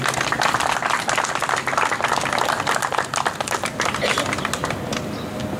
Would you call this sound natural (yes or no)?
yes